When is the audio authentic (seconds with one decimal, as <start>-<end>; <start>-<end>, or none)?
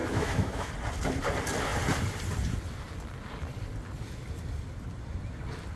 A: 0.7-5.8